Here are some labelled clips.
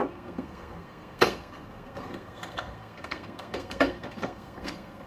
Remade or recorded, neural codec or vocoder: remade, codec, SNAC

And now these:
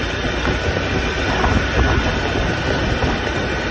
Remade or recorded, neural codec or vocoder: recorded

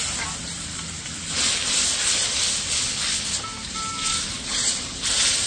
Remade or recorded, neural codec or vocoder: recorded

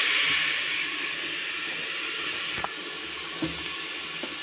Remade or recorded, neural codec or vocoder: recorded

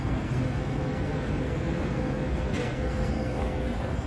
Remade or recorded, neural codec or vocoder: remade, codec, SNAC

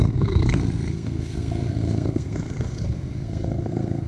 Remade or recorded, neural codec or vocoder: remade, codec, SNAC